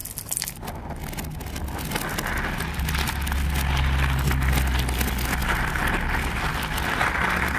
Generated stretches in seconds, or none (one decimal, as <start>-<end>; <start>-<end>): none